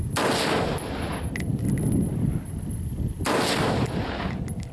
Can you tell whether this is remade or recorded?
recorded